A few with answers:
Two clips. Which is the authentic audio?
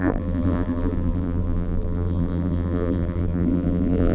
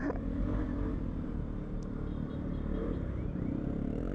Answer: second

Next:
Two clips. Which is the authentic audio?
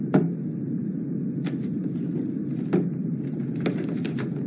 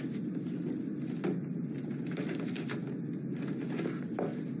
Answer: second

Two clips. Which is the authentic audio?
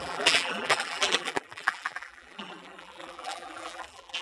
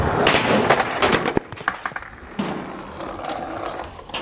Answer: second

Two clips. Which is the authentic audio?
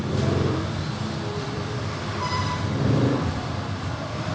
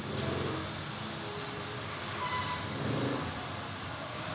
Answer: second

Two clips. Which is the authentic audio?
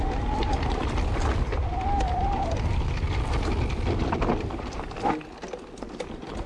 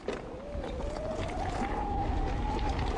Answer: second